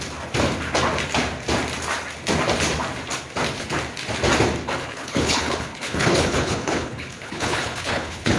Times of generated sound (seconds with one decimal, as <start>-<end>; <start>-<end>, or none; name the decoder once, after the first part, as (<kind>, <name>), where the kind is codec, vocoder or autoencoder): 4.8-8.4 (codec, HILCodec)